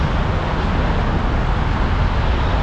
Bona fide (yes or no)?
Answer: yes